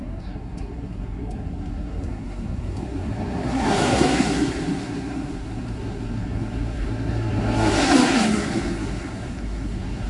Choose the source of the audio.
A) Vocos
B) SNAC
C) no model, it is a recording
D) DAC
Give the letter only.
B